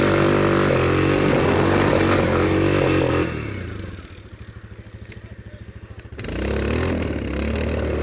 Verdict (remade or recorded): recorded